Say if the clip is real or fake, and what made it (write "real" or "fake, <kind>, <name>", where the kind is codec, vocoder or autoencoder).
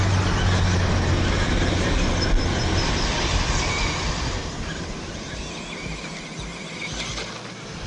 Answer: real